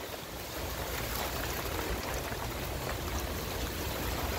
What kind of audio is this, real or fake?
real